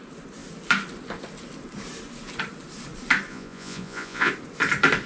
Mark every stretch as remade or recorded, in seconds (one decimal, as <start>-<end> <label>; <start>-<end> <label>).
0.0-3.3 recorded; 3.3-4.3 remade; 4.3-5.1 recorded